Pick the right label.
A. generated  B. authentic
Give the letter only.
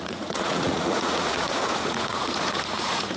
A